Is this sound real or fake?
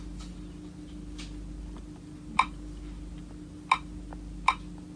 real